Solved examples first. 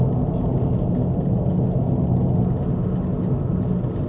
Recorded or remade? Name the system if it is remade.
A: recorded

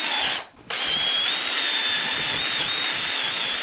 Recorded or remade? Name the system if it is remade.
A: recorded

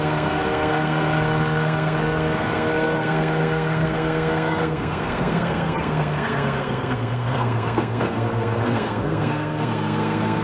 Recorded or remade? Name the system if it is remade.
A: remade, codec, SNAC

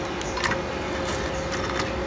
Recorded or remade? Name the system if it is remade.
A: recorded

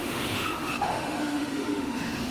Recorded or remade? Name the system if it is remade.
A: remade, autoencoder, DAC-VAE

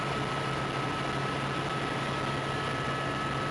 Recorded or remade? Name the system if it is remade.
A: recorded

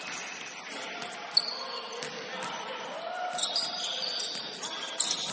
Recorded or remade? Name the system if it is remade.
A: recorded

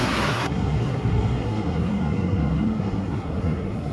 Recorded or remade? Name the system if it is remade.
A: remade, codec, SNAC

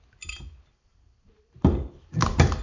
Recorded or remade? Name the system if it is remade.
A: recorded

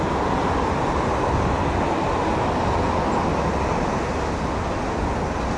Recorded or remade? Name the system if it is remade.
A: recorded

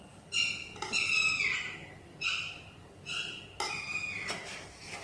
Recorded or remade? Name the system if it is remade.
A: recorded